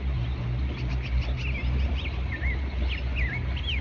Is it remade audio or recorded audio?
recorded